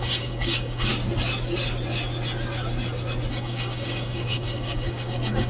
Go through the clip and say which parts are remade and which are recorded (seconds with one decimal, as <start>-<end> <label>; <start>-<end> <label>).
0.0-0.9 remade; 0.9-3.3 recorded; 3.3-5.5 remade